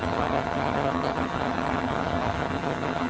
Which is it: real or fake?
fake